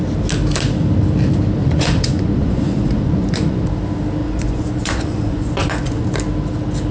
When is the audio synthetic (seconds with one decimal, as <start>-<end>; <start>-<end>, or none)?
1.6-3.6; 4.2-6.1